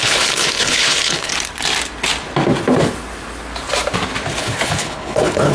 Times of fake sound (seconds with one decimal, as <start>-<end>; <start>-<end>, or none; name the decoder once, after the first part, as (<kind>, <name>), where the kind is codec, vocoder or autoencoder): 0.0-1.3 (codec, HILCodec); 4.4-5.5